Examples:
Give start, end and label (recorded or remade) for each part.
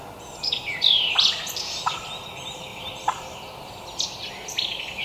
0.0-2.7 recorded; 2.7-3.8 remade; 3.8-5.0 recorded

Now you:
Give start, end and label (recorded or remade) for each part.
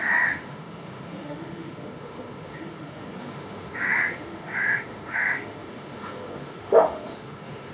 0.0-7.7 remade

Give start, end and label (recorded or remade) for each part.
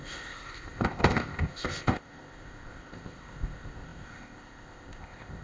0.0-5.4 remade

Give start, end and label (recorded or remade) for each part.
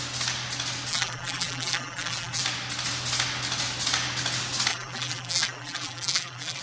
0.0-0.9 recorded; 0.9-2.4 remade; 2.4-4.7 recorded; 4.7-6.6 remade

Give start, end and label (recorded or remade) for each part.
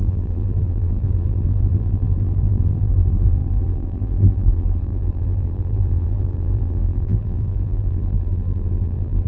0.0-9.3 remade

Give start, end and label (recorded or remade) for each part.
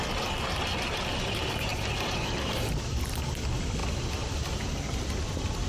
0.0-1.7 recorded; 1.7-3.3 remade; 3.3-5.7 recorded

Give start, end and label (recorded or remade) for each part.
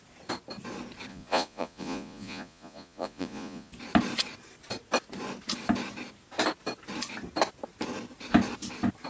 0.0-1.1 recorded; 1.1-3.7 remade; 3.7-9.1 recorded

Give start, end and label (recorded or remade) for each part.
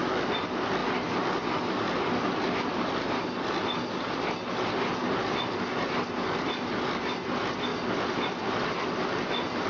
0.0-9.7 recorded